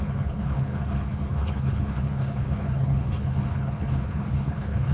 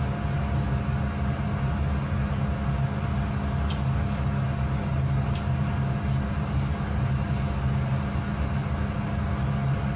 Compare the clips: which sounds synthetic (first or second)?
first